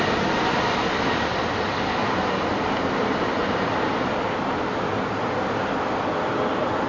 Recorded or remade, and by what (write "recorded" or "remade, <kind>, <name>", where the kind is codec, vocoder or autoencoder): recorded